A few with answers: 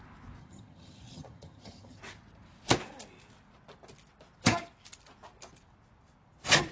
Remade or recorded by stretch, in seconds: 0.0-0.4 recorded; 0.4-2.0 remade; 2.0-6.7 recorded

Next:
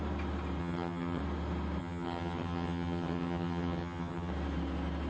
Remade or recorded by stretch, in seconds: 0.0-0.6 recorded; 0.6-1.2 remade; 1.2-1.8 recorded; 1.8-4.3 remade; 4.3-5.1 recorded

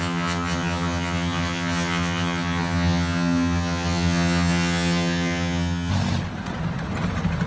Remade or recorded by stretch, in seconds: 0.0-5.9 remade; 5.9-7.5 recorded

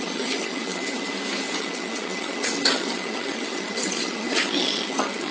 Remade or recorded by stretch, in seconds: 0.0-1.1 remade; 1.1-1.6 recorded; 1.6-5.3 remade

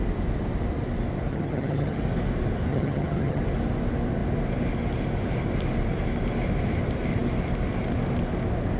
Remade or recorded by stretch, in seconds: 0.0-1.3 recorded; 1.3-2.0 remade; 2.0-2.7 recorded; 2.7-3.4 remade; 3.4-8.8 recorded

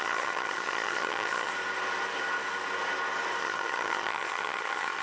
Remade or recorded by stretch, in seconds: 0.0-1.5 remade; 1.5-3.4 recorded; 3.4-5.0 remade

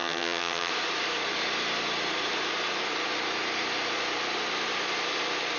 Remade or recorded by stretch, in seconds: 0.0-0.7 remade; 0.7-5.6 recorded